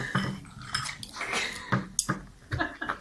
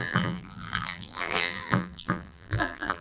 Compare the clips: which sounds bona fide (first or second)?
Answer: first